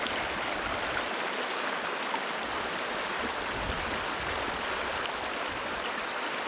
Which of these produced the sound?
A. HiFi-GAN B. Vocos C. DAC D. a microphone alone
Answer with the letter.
D